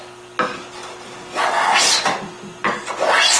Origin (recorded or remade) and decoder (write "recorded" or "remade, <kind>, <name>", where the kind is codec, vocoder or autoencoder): recorded